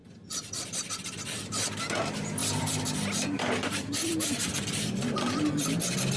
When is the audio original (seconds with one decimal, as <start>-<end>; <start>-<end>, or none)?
1.7-2.4